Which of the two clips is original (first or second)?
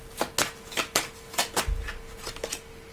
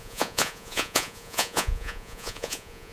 first